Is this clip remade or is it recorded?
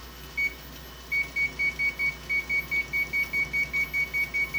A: recorded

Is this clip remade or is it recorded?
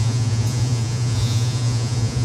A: remade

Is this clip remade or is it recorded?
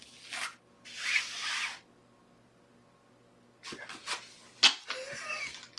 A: recorded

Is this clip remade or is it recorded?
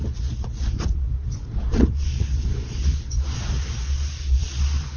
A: remade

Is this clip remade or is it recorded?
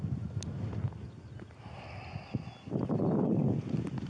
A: recorded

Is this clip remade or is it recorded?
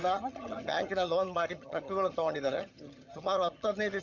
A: remade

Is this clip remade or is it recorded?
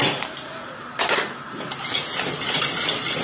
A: recorded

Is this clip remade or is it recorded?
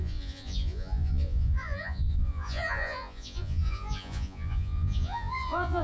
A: remade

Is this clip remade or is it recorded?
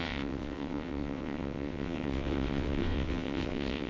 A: remade